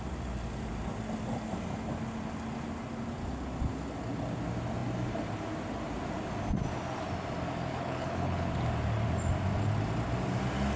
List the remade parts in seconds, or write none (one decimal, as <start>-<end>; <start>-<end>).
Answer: 7.7-8.5